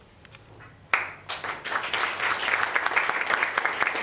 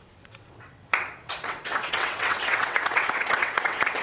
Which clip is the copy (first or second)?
second